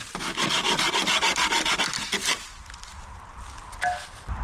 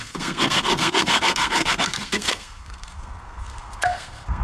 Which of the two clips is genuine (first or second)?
first